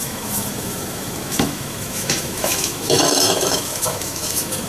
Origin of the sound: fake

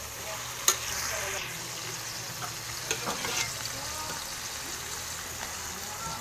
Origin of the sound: real